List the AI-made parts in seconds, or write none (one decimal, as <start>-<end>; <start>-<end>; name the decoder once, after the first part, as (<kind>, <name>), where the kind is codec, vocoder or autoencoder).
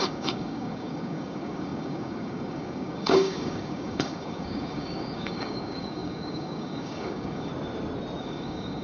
0.0-7.5 (codec, DAC); 8.2-8.8